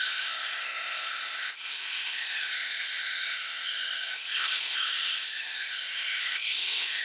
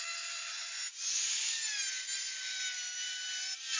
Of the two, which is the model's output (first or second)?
first